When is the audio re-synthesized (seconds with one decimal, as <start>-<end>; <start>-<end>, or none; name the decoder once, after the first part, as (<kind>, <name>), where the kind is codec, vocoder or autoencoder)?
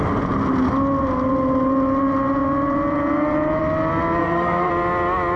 4.2-4.7 (codec, SNAC)